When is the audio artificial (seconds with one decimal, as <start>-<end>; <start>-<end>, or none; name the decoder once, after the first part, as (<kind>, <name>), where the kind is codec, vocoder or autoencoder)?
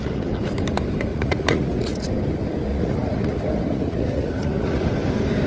1.1-2.1 (vocoder, Vocos); 2.7-4.9